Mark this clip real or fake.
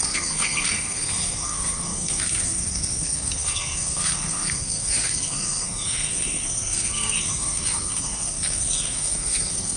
fake